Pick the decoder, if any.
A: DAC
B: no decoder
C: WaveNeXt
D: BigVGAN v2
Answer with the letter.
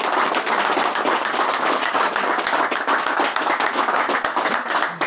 B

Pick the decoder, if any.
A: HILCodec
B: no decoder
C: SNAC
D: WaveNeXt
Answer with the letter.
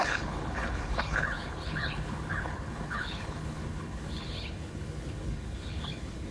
A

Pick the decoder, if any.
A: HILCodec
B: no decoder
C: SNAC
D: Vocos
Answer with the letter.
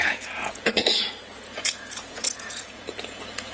D